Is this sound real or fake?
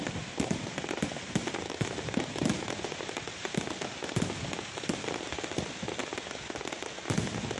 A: fake